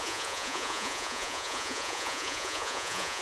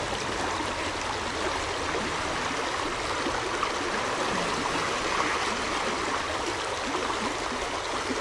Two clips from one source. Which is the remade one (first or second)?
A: first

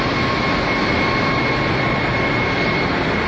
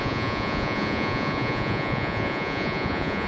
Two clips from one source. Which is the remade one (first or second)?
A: second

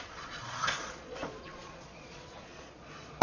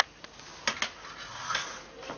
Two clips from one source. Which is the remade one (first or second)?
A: first